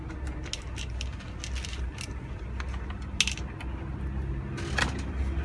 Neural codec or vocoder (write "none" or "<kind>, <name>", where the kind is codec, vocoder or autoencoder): none